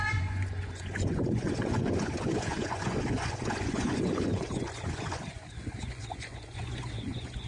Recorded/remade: remade